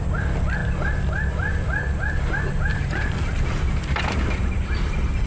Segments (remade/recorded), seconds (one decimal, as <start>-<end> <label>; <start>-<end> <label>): 0.0-2.7 recorded; 2.7-3.7 remade; 3.7-5.3 recorded